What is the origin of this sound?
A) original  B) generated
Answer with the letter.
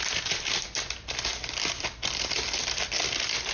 A